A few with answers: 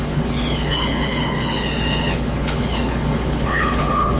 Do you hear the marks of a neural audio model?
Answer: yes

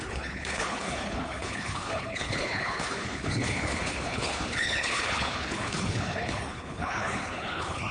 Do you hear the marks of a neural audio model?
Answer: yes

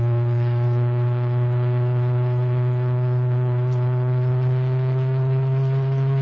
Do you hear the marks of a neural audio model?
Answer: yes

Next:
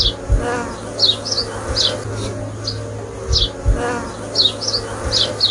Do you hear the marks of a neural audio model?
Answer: no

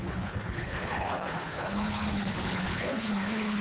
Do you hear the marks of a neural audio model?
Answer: yes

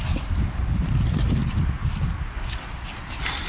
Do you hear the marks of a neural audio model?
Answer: no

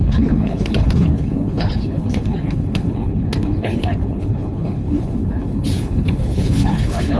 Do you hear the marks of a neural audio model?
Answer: yes